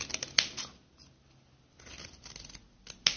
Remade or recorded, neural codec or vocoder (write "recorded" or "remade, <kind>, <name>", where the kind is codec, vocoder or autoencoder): recorded